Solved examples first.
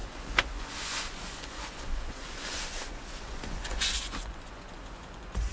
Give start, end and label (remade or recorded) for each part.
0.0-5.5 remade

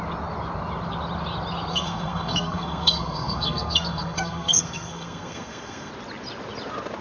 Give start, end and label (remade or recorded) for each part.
0.0-1.7 recorded; 1.7-5.9 remade; 5.9-7.0 recorded